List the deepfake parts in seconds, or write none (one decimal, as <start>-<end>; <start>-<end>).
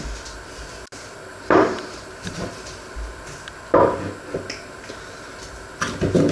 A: 1.3-2.3